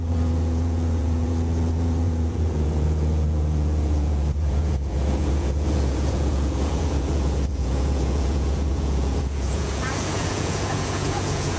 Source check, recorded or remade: remade